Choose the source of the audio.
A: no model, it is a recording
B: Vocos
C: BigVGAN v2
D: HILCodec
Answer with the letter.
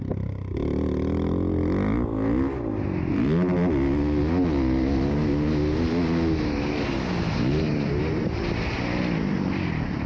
A